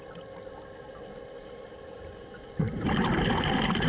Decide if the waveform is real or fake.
real